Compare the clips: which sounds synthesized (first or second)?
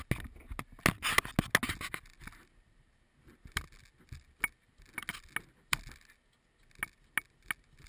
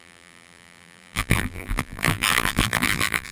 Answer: second